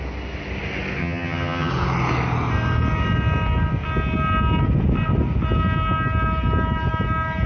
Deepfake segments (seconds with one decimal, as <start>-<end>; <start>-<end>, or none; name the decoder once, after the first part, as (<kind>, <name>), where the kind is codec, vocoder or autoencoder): 1.0-1.7 (vocoder, HiFi-GAN)